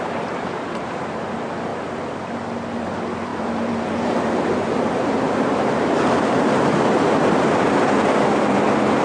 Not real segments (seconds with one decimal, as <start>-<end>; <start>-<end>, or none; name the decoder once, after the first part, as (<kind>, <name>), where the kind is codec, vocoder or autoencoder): 0.0-1.7 (vocoder, BigVGAN v2); 2.8-9.0